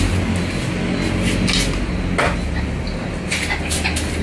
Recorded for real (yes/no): yes